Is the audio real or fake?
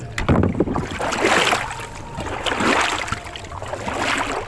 real